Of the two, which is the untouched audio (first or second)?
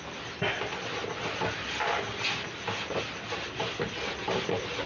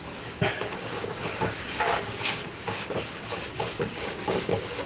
first